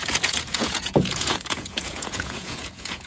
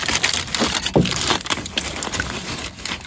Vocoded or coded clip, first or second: first